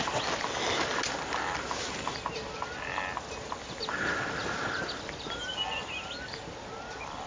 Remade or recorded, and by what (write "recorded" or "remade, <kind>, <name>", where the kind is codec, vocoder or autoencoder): recorded